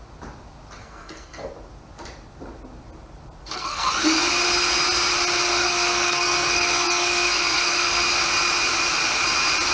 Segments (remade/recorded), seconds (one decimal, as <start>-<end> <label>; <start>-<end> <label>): 0.0-0.8 recorded; 0.8-1.5 remade; 1.5-3.4 recorded; 3.4-3.9 remade; 3.9-5.5 recorded; 5.5-8.0 remade; 8.0-9.7 recorded